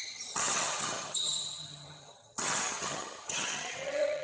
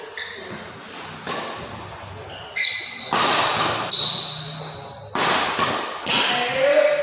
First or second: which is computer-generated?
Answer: first